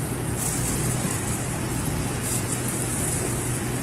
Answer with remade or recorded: recorded